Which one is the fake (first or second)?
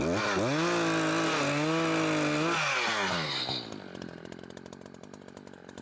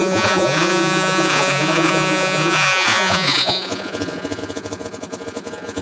second